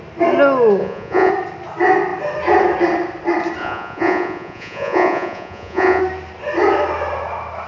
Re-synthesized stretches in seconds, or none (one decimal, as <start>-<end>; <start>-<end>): 0.8-1.3; 3.6-6.0